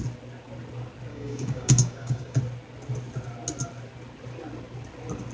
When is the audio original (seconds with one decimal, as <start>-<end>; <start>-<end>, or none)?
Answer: 0.0-1.1; 2.4-5.3